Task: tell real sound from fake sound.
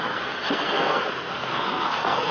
fake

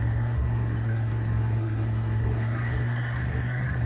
fake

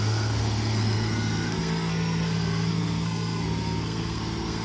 fake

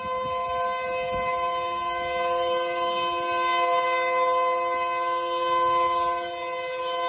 real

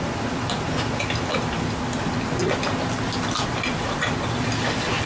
real